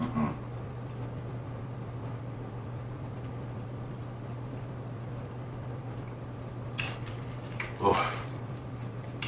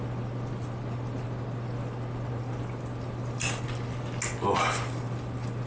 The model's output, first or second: first